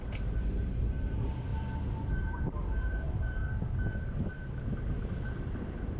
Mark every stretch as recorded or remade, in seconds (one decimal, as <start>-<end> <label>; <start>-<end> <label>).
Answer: 0.0-1.5 remade; 1.5-2.1 recorded; 2.1-3.4 remade; 3.4-4.8 recorded; 4.8-6.0 remade